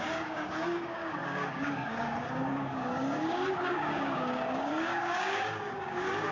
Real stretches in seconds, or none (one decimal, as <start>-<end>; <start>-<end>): none

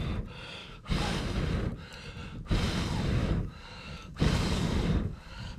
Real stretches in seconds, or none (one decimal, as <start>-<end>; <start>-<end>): 0.0-0.6; 1.2-3.2

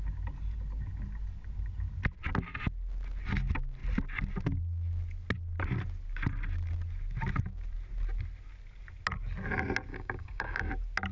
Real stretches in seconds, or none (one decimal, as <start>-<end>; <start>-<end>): 0.0-9.9; 10.7-11.1

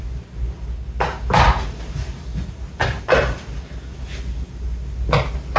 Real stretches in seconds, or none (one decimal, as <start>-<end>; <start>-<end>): 0.0-5.6